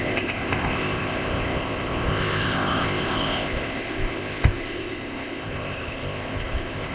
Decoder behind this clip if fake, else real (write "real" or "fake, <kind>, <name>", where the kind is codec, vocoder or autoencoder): fake, codec, ZipCodec